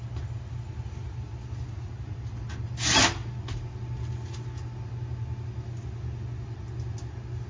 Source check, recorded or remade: recorded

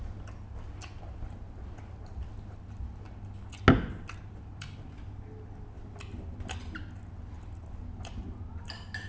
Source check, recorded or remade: recorded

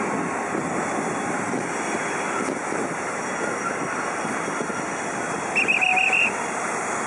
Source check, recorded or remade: recorded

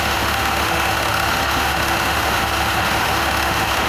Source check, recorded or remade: remade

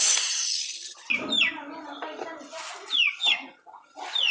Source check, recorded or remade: recorded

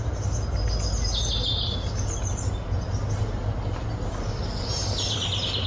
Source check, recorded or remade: recorded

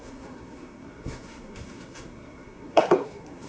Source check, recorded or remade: remade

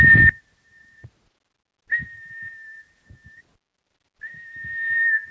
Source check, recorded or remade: recorded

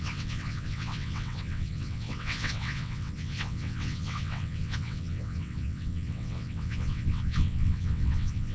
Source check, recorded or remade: remade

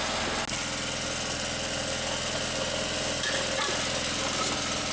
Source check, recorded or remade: recorded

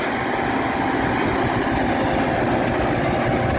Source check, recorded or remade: recorded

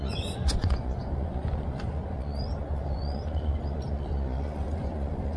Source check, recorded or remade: remade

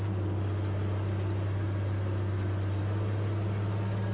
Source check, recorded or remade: recorded